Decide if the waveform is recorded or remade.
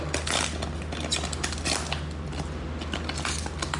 recorded